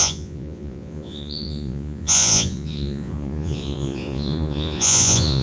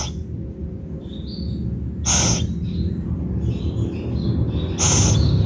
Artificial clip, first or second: first